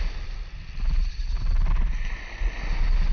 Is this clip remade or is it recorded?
recorded